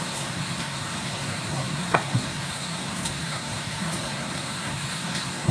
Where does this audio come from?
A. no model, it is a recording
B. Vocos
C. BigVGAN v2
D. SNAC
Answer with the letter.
D